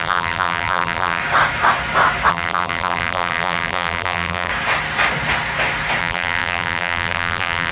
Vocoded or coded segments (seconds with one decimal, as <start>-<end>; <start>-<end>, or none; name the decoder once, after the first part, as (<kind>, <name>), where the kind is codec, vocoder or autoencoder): 0.0-1.2 (vocoder, BigVGAN v2); 2.3-4.5; 6.0-7.7